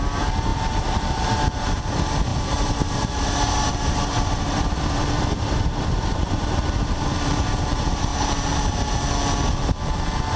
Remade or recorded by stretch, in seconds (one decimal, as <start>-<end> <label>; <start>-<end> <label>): 0.0-8.1 remade; 8.1-10.4 recorded